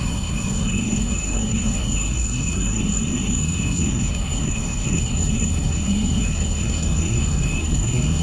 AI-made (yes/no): yes